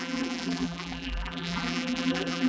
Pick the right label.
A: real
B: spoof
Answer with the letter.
B